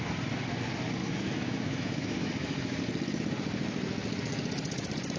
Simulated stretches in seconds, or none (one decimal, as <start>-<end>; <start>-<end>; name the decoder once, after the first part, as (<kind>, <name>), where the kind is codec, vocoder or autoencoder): 1.0-2.8 (autoencoder, DAC-VAE)